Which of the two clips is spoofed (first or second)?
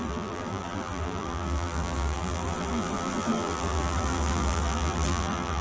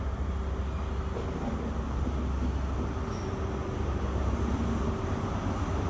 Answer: first